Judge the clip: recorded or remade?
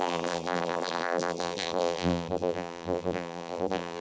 remade